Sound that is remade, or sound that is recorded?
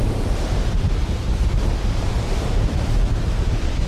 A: recorded